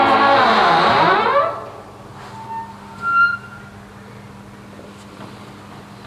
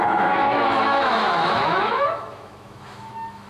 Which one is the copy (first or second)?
second